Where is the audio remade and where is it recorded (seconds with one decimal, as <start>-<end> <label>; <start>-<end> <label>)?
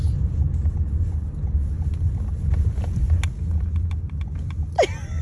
0.0-5.2 recorded